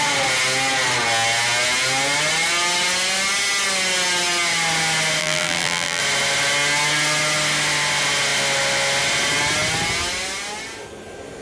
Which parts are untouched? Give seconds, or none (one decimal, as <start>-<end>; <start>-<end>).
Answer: 0.0-5.2; 6.0-11.4